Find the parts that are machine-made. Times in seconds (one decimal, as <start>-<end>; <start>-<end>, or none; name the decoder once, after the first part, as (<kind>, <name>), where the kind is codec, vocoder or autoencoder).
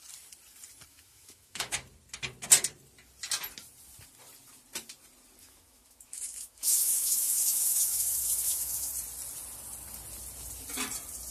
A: 0.9-1.7 (autoencoder, DAC-VAE); 5.4-8.9